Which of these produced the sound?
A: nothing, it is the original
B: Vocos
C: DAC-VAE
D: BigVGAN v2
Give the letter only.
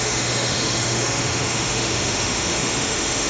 C